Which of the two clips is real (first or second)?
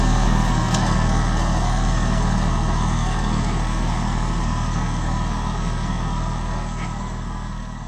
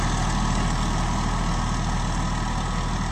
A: second